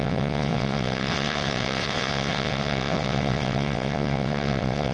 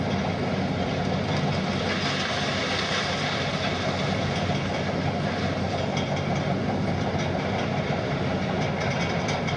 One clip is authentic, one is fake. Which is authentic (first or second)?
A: second